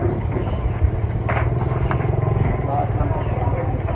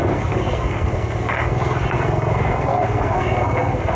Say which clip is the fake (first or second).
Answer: second